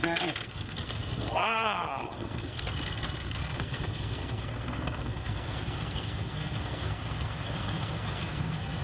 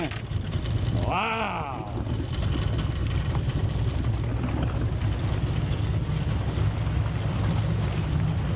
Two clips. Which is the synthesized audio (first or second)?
first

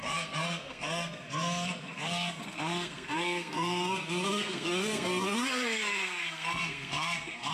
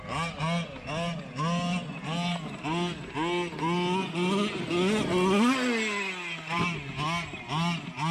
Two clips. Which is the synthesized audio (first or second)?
first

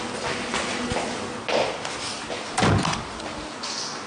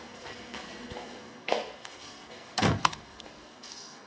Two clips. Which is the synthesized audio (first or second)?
second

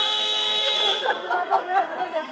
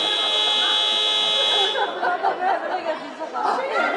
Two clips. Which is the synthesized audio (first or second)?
first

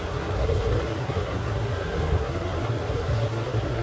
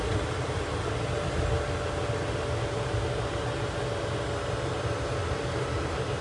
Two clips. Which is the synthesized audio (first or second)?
first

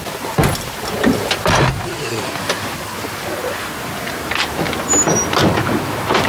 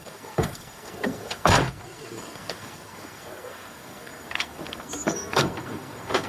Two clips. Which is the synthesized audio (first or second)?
second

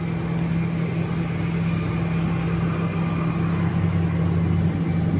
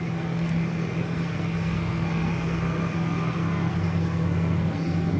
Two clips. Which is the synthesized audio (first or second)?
second